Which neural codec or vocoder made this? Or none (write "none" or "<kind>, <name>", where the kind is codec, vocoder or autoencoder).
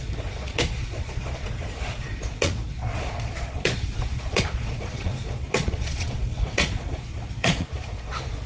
vocoder, Vocos